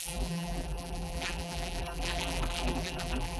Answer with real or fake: fake